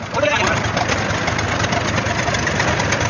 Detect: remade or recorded recorded